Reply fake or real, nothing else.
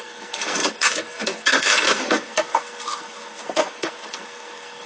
fake